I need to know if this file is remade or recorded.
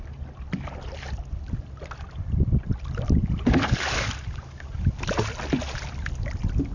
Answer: recorded